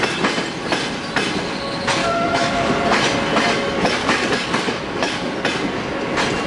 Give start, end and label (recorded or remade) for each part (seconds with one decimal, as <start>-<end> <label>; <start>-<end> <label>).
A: 0.0-2.0 recorded; 2.0-2.7 remade; 2.7-4.0 recorded; 4.0-5.3 remade; 5.3-6.5 recorded